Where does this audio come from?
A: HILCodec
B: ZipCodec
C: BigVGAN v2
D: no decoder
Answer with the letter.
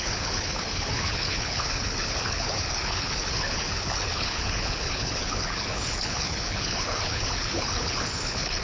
A